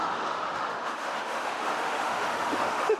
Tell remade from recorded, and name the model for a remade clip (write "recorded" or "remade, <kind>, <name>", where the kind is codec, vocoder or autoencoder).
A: remade, autoencoder, DAC-VAE